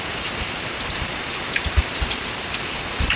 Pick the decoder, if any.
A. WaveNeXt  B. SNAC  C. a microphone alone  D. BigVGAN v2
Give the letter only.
D